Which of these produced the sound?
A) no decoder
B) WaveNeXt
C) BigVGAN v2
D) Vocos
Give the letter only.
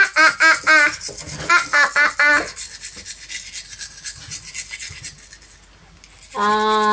A